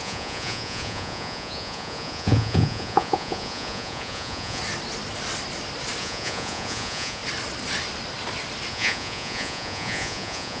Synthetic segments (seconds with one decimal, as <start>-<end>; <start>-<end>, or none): 0.0-4.6; 6.0-7.2; 8.7-10.6